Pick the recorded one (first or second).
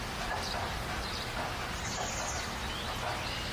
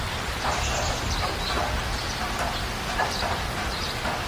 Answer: first